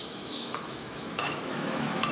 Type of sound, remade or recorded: remade